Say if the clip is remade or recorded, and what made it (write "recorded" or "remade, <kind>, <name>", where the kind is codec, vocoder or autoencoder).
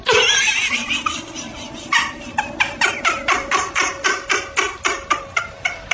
recorded